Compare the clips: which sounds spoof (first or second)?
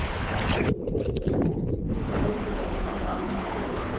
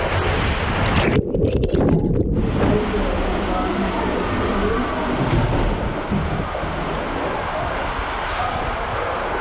first